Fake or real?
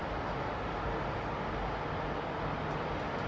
real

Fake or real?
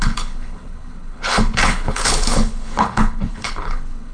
fake